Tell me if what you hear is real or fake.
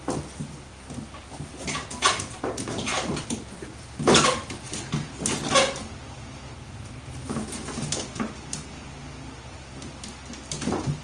real